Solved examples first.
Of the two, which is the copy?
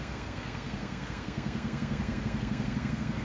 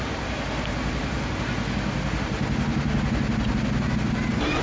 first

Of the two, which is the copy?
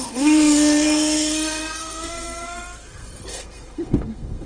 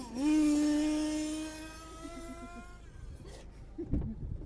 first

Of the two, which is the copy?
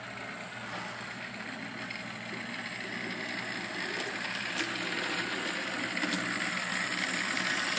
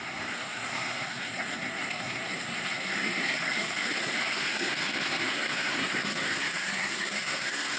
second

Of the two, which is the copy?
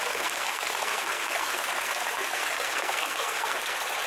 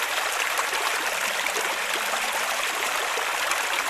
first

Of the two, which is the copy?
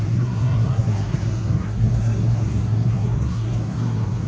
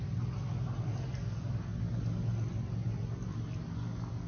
first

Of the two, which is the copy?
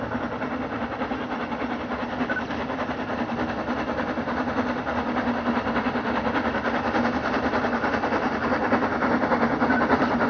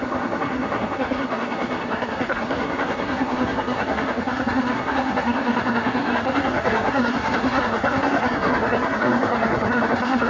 second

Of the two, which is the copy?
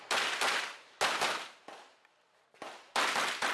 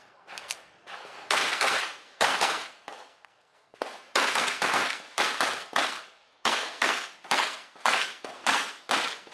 second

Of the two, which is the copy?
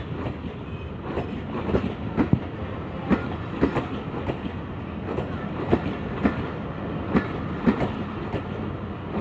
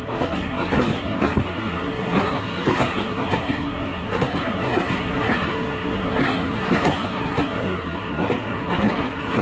second